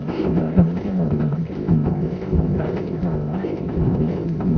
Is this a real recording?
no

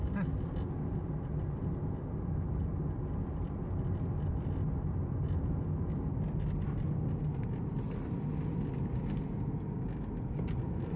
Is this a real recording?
yes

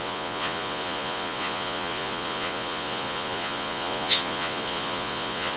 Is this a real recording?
no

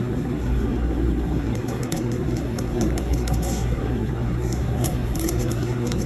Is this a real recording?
no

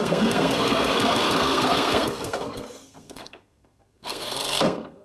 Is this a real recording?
no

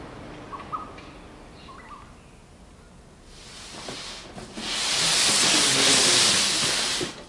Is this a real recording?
yes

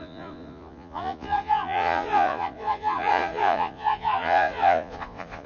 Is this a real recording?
no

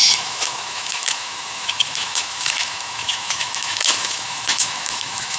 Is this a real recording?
no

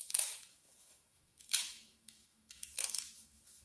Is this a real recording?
no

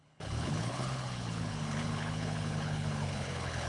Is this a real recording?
no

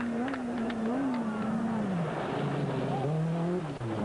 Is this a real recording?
yes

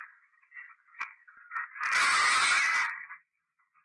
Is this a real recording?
yes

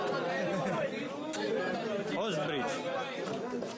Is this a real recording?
yes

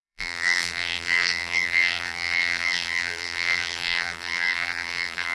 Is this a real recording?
no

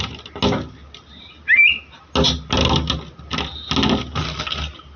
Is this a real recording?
yes